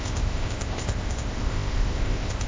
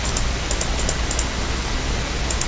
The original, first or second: second